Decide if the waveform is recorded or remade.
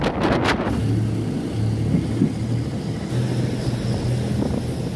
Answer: recorded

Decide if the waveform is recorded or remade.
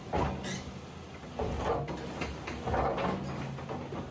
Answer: recorded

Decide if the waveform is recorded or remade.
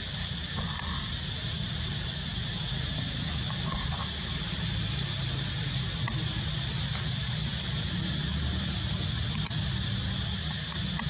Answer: recorded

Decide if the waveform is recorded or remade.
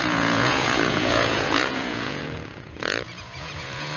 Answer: remade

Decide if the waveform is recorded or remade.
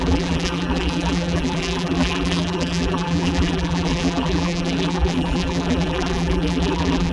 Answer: remade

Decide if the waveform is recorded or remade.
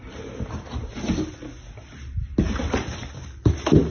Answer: recorded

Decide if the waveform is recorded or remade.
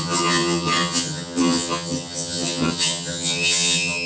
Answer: remade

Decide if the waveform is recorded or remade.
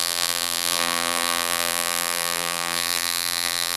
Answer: remade